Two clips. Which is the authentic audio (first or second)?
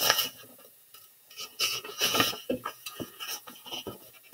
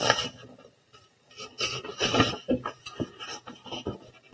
second